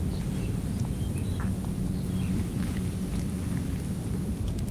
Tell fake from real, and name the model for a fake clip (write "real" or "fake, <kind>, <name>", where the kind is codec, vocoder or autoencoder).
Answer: real